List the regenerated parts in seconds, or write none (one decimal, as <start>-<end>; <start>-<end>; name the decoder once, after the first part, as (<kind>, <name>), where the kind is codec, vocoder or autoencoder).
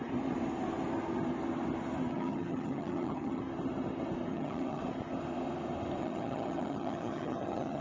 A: 2.1-3.4 (vocoder, HiFi-GAN); 4.3-4.8; 6.0-7.8